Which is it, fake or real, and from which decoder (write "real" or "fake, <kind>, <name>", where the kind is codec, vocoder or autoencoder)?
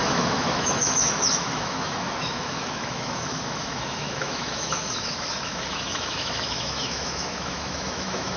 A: fake, autoencoder, DAC-VAE